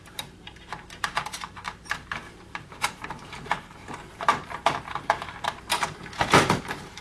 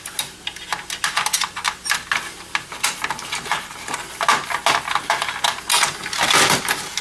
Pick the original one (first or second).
second